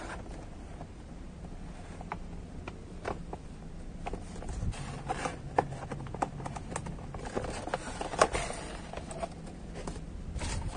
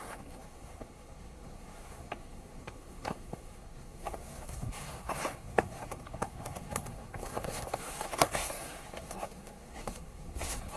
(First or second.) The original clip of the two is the first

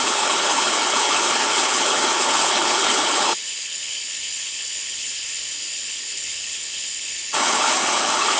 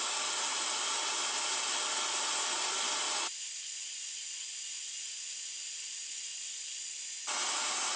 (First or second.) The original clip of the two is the second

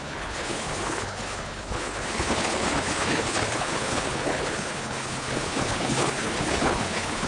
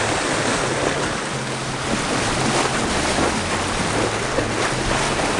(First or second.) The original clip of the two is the second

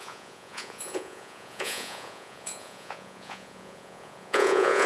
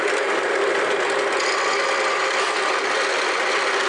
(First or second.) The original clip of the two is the second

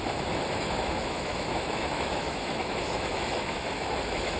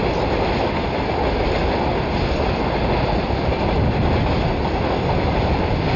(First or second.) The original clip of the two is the second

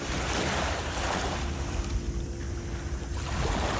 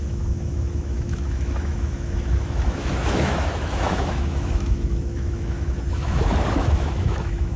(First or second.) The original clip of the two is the first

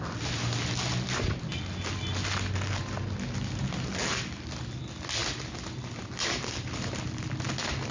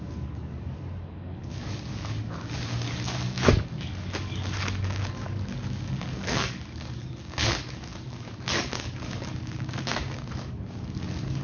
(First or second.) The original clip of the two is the first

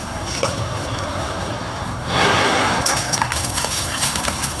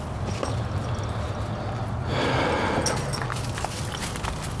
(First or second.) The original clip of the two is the second